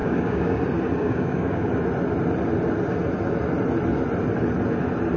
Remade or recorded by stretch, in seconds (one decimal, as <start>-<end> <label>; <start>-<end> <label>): 0.0-0.6 remade; 0.6-1.0 recorded; 1.0-1.7 remade; 1.7-5.2 recorded